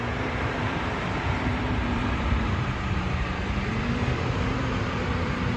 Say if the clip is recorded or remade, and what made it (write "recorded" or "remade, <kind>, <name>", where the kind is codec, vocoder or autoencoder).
remade, vocoder, BigVGAN v2